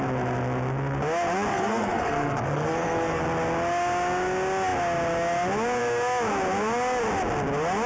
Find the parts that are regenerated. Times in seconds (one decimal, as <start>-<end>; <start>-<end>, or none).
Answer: 1.5-3.2